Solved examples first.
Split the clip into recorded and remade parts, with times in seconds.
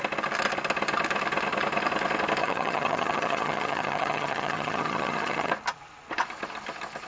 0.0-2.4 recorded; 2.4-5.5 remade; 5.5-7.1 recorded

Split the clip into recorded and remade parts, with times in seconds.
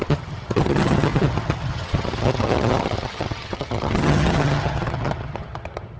0.0-6.0 remade